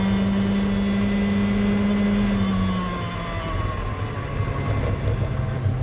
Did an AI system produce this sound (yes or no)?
no